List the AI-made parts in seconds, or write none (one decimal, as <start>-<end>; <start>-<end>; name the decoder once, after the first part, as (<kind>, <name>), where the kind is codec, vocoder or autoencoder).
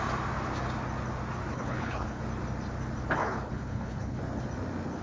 1.5-2.2 (codec, HILCodec); 3.2-4.2